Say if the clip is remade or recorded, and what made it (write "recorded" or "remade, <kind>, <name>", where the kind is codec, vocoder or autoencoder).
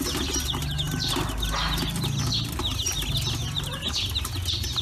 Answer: recorded